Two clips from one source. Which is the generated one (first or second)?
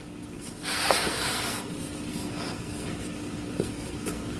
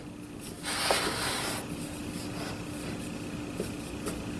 first